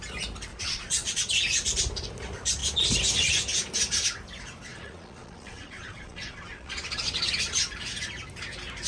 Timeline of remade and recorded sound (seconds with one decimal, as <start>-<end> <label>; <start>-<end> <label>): 0.0-0.5 recorded; 0.5-1.3 remade; 1.3-4.7 recorded; 4.7-7.4 remade; 7.4-8.9 recorded